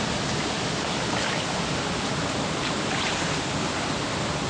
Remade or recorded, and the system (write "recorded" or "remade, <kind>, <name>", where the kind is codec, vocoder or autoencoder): recorded